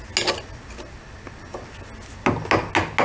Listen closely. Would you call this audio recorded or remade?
recorded